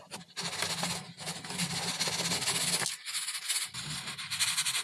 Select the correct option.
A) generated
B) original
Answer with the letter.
B